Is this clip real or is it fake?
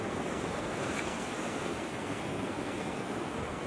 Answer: fake